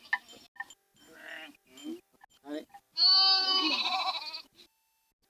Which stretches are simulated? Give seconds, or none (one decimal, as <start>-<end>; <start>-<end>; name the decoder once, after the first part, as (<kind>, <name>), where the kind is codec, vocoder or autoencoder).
none